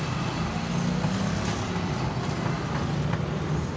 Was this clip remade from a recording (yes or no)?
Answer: no